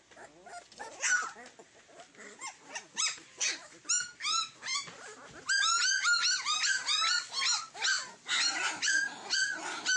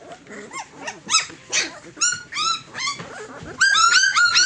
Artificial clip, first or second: second